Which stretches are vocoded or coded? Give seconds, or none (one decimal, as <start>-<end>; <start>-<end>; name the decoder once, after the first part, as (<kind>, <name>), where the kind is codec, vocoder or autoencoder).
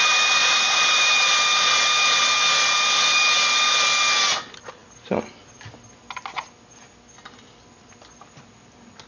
0.4-1.3 (vocoder, BigVGAN v2)